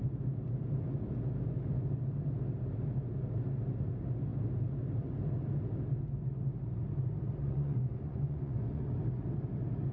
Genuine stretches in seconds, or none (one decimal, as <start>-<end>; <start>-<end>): 0.0-7.4; 8.9-9.9